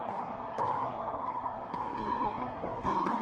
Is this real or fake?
fake